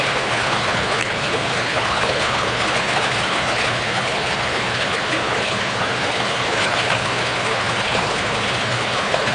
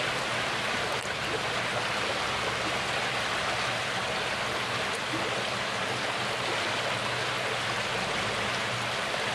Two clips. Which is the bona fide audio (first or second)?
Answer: second